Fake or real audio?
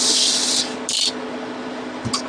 real